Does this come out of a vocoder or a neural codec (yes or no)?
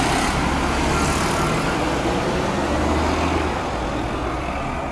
no